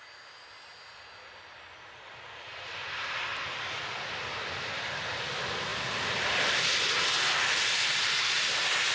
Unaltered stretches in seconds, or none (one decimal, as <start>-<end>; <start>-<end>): 0.0-8.9